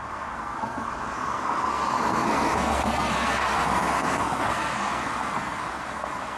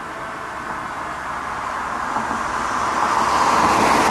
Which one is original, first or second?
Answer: second